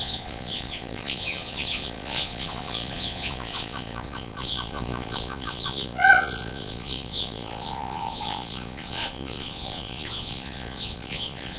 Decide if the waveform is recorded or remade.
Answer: remade